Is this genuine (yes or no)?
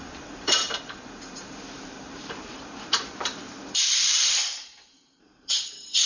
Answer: no